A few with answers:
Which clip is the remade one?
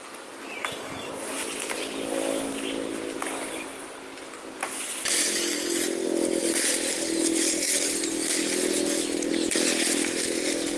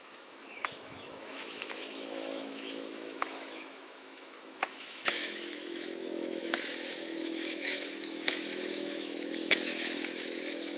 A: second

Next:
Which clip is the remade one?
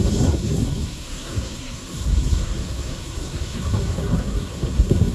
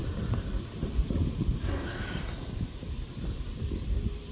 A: first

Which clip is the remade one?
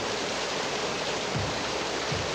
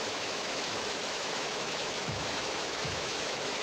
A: second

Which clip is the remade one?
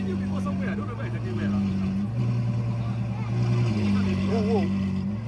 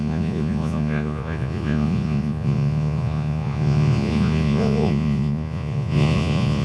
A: second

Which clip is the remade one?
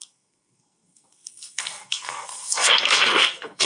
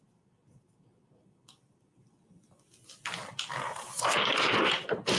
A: first